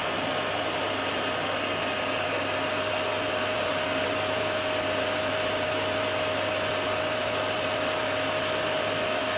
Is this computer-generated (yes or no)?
no